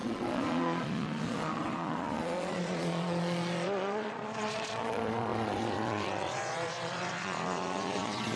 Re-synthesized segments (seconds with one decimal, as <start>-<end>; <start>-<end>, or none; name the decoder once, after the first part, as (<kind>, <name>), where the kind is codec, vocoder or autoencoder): 0.0-8.4 (vocoder, Vocos)